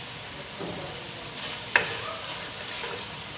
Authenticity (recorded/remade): recorded